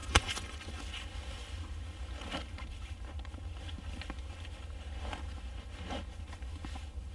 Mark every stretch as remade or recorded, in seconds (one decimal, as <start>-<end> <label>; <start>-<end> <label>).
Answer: 0.0-0.8 remade; 0.8-7.1 recorded